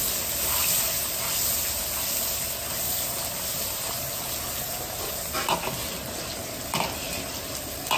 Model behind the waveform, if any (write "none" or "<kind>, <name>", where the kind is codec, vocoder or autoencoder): none